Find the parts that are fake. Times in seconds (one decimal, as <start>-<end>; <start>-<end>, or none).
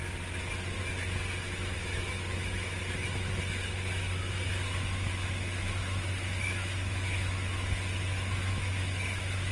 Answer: 1.4-9.5